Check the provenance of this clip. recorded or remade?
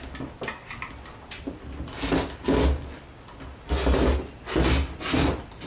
recorded